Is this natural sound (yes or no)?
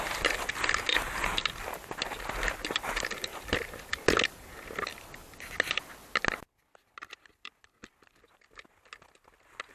yes